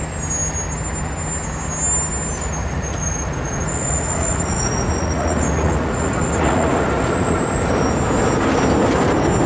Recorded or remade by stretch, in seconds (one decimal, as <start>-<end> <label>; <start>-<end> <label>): 0.0-2.6 recorded; 2.6-7.7 remade; 7.7-9.5 recorded